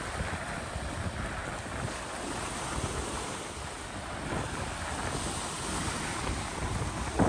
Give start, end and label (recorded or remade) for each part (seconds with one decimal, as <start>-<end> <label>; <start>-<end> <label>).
0.0-7.3 recorded